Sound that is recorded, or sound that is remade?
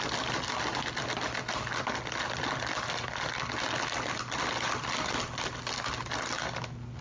recorded